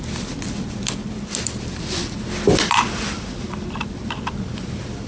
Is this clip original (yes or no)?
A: no